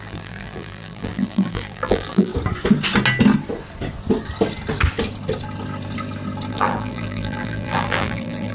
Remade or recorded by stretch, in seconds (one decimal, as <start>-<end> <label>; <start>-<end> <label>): 0.0-2.3 remade; 2.3-6.5 recorded; 6.5-8.5 remade